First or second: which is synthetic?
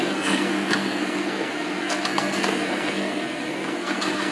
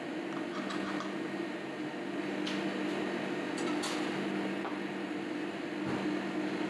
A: first